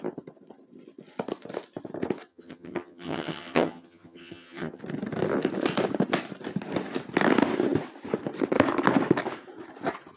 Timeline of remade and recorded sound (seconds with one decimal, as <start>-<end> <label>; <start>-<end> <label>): 0.0-2.3 recorded; 2.3-4.8 remade; 4.8-10.2 recorded